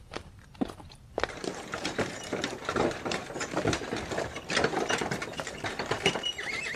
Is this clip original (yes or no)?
no